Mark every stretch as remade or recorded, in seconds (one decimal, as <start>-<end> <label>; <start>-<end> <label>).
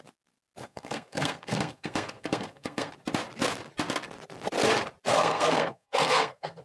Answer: 0.0-0.6 recorded; 0.6-2.9 remade; 2.9-5.1 recorded; 5.1-6.6 remade